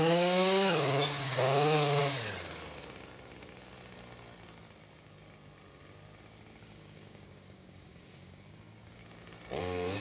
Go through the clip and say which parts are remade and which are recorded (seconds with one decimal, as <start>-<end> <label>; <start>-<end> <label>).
0.0-2.0 remade; 2.0-6.6 recorded; 6.6-9.0 remade; 9.0-9.6 recorded; 9.6-10.0 remade